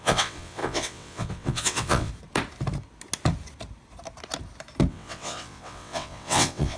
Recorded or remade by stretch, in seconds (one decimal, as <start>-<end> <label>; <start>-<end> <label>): 0.0-2.1 remade; 2.1-4.9 recorded; 4.9-6.8 remade

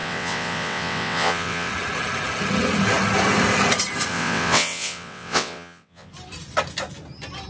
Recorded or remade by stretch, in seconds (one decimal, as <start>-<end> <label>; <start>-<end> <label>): 0.0-1.7 remade; 1.7-4.1 recorded; 4.1-6.1 remade; 6.1-7.5 recorded

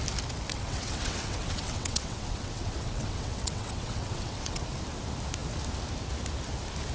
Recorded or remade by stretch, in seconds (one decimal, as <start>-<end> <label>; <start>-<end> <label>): 0.0-0.5 recorded; 0.5-4.6 remade; 4.6-6.9 recorded

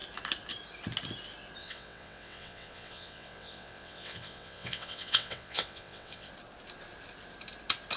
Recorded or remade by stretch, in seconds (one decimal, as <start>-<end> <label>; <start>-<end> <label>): 0.0-1.6 recorded; 1.6-6.3 remade; 6.3-8.0 recorded

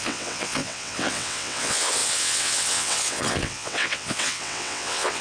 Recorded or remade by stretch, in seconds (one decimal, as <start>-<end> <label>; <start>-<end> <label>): 0.0-5.2 remade